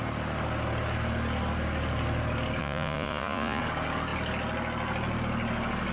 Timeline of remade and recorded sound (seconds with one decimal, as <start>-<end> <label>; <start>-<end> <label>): 0.0-2.6 recorded; 2.6-3.6 remade; 3.6-5.9 recorded